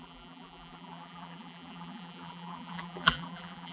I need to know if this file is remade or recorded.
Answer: remade